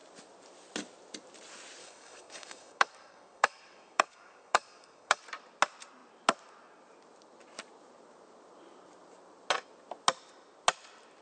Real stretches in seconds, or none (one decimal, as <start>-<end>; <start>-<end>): 0.0-1.8; 5.2-11.2